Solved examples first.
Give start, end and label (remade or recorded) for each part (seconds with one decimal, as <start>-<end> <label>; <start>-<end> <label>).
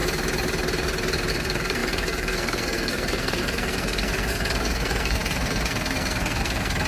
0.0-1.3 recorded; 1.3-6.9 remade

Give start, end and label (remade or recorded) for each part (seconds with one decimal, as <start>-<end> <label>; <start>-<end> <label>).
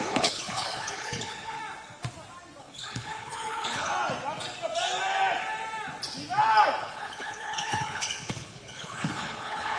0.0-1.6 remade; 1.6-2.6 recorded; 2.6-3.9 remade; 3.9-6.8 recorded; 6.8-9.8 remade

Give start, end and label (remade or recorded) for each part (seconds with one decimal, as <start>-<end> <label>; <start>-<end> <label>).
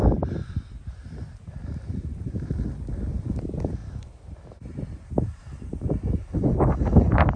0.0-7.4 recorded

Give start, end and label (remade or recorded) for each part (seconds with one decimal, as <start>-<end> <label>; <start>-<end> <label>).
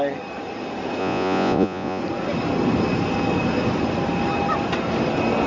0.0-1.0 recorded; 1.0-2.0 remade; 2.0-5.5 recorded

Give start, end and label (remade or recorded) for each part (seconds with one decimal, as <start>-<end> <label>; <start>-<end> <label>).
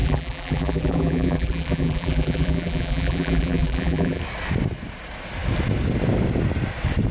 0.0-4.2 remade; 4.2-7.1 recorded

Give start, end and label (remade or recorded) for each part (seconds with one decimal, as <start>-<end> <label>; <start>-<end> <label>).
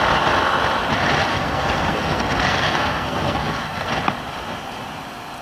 0.0-1.3 recorded; 1.3-3.9 remade; 3.9-5.4 recorded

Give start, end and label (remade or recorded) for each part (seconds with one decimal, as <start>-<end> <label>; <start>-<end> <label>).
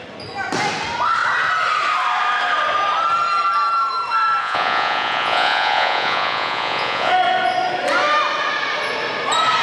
0.0-4.4 recorded; 4.4-7.1 remade; 7.1-9.6 recorded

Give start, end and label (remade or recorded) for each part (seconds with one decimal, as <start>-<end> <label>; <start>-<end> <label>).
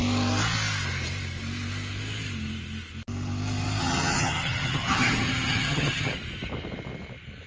0.0-3.8 recorded; 3.8-6.1 remade; 6.1-7.5 recorded